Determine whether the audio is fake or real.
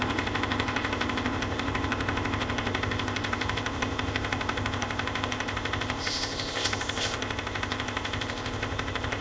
fake